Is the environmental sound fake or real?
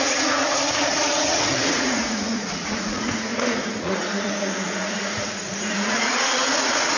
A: fake